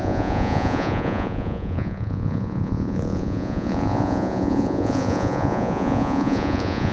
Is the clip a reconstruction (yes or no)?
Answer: yes